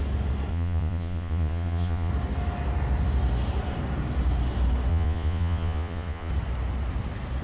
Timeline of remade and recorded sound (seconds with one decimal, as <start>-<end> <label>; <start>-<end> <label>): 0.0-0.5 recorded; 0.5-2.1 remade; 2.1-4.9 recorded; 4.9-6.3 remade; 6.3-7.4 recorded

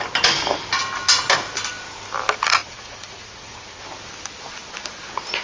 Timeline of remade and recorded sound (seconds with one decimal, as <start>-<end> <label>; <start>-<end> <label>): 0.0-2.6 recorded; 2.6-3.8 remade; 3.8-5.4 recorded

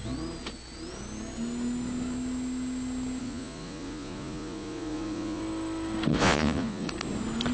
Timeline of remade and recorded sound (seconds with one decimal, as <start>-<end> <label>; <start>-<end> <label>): 0.0-3.2 recorded; 3.2-5.4 remade; 5.4-6.1 recorded; 6.1-6.9 remade; 6.9-7.5 recorded

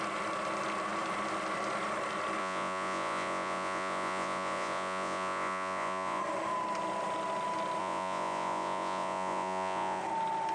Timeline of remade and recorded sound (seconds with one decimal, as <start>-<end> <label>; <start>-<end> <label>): 0.0-2.4 recorded; 2.4-6.2 remade; 6.2-7.8 recorded; 7.8-10.0 remade; 10.0-10.5 recorded

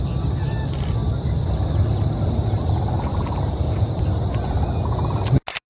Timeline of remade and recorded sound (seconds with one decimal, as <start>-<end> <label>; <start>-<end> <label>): 0.0-3.1 recorded; 3.1-3.9 remade; 3.9-5.7 recorded

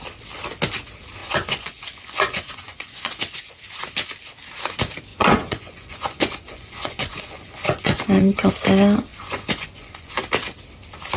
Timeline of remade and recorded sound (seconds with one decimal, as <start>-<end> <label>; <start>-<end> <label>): 0.0-1.2 recorded; 1.2-3.5 remade; 3.5-5.1 recorded; 5.1-8.5 remade; 8.5-9.1 recorded; 9.1-10.1 remade; 10.1-11.2 recorded

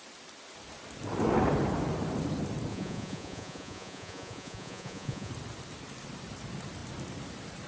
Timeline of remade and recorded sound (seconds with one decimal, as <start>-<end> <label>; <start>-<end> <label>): 0.0-2.7 recorded; 2.7-5.3 remade; 5.3-7.7 recorded

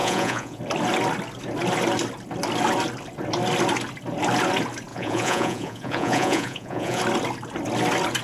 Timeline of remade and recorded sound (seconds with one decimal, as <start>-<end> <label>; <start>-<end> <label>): 0.0-0.6 remade; 0.6-4.9 recorded; 4.9-7.0 remade; 7.0-8.2 recorded